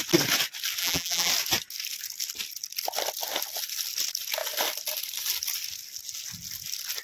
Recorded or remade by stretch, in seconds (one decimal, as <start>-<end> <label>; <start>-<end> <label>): 0.0-0.8 recorded; 0.8-1.3 remade; 1.3-7.0 recorded